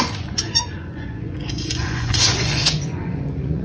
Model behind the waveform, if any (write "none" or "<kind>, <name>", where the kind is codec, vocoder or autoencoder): vocoder, Vocos